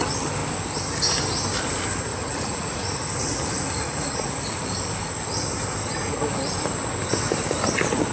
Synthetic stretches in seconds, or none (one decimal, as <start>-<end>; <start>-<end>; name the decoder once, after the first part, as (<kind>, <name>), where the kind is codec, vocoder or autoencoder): 2.1-4.6 (vocoder, Vocos)